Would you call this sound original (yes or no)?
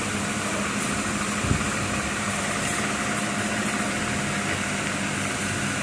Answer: no